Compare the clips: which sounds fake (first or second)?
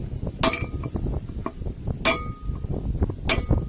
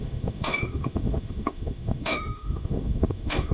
second